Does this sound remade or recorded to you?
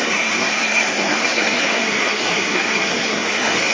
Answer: remade